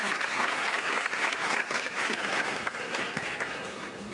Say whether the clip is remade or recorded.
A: remade